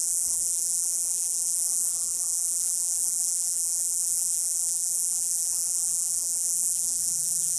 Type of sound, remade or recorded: remade